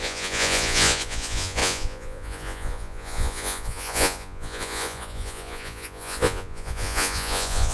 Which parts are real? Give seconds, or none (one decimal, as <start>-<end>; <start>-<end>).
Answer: none